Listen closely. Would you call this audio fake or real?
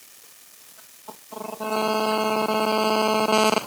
real